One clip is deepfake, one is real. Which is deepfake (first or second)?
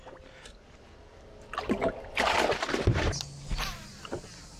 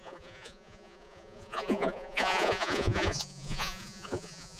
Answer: second